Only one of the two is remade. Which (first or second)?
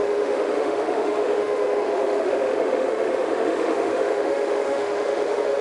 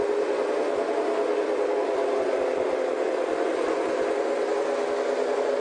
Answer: first